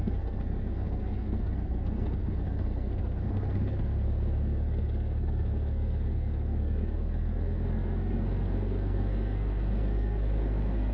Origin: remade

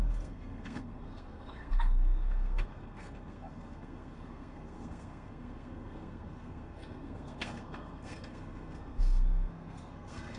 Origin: remade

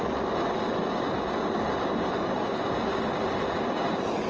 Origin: recorded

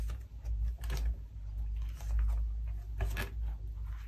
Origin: recorded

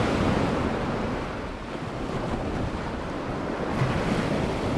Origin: recorded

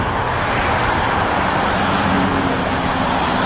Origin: remade